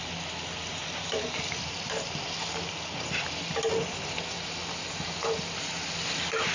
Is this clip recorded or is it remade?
recorded